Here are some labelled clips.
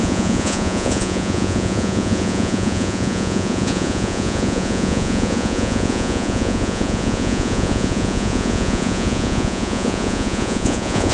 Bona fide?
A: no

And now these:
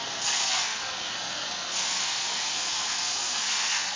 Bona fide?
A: no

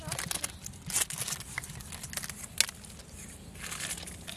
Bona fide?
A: yes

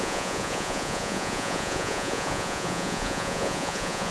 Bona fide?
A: no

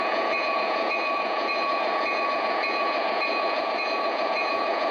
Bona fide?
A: no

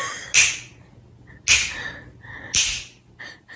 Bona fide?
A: yes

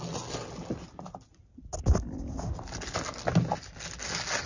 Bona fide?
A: yes